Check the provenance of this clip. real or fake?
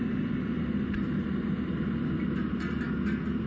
real